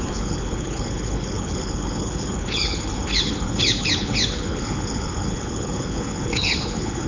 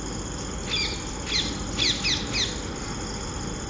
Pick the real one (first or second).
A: second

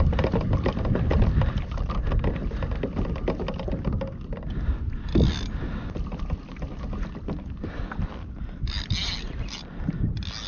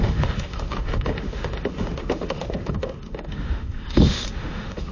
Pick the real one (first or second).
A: first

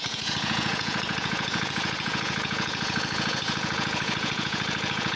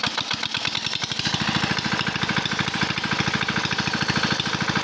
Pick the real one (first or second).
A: second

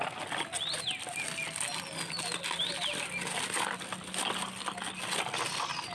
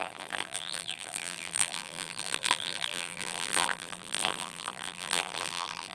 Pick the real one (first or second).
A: first